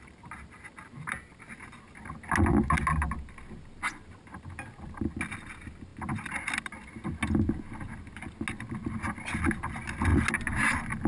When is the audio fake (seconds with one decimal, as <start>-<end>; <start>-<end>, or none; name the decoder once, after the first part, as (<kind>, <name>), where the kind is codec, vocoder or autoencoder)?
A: none